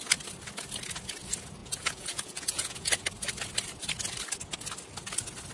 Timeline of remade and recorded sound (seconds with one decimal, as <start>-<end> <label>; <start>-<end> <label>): 0.0-1.6 recorded; 1.6-3.0 remade; 3.0-5.5 recorded